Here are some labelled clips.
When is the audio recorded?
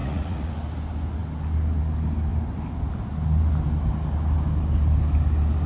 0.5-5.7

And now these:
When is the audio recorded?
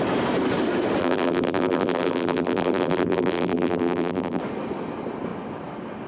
0.0-1.0; 4.4-6.1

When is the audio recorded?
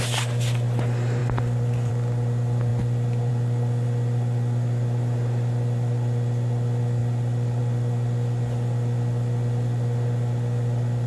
0.0-11.1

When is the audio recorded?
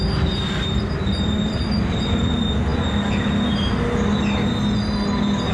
0.0-5.5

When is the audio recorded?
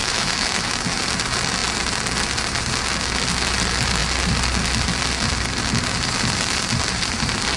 0.8-7.6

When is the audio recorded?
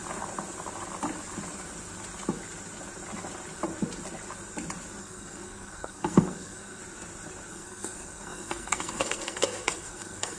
0.0-5.0; 6.8-7.5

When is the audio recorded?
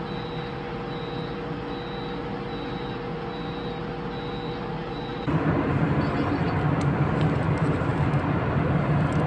0.0-5.1; 5.7-9.3